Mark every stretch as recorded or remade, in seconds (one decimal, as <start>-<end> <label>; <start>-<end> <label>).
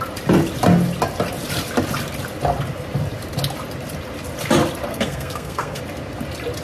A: 0.0-4.9 recorded; 4.9-5.8 remade; 5.8-6.6 recorded